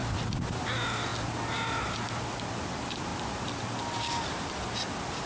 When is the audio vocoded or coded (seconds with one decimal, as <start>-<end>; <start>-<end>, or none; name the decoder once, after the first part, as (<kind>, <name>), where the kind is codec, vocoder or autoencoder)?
0.6-5.3 (vocoder, BigVGAN v2)